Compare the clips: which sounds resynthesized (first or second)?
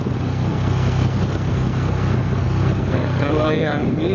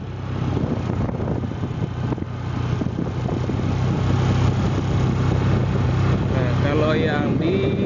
first